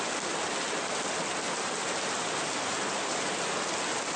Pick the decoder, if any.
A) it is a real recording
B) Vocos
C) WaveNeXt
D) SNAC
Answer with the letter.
A